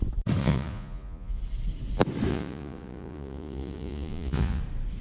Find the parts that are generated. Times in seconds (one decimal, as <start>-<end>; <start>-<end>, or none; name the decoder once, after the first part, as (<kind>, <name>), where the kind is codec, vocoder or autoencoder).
0.4-1.4 (vocoder, Vocos); 2.3-4.6